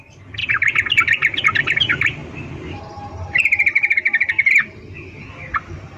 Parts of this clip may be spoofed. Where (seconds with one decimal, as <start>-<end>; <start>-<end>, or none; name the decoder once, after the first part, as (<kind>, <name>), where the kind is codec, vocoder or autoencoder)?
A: 0.0-0.4 (vocoder, BigVGAN v2); 1.6-2.2